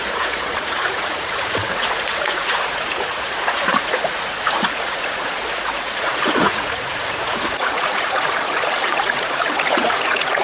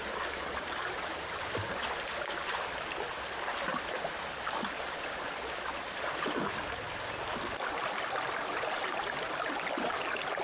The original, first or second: second